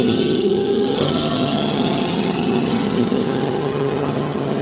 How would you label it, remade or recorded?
remade